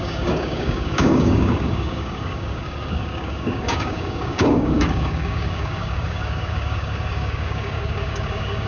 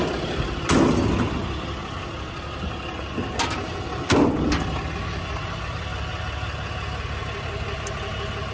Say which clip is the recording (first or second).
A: second